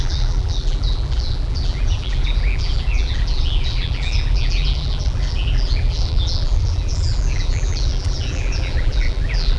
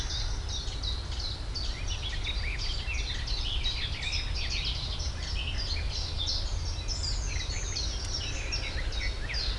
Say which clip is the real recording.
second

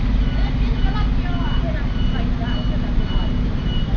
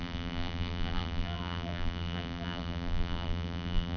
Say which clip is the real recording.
first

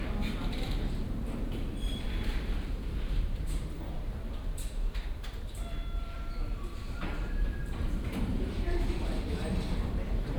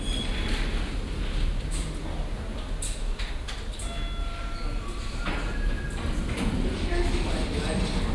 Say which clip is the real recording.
second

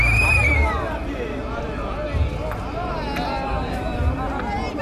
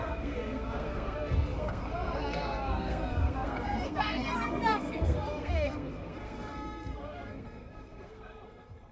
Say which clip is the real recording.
first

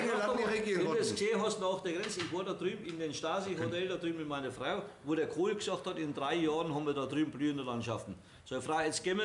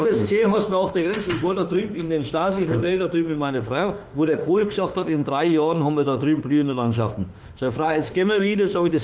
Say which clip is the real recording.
first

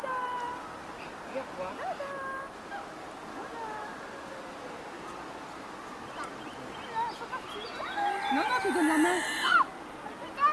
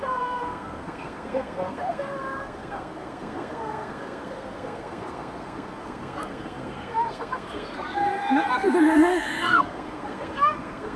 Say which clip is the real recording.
first